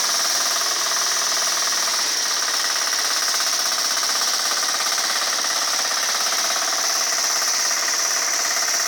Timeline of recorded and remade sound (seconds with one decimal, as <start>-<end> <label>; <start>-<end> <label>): 0.0-1.9 remade; 1.9-2.6 recorded; 2.6-5.9 remade; 5.9-6.7 recorded; 6.7-8.9 remade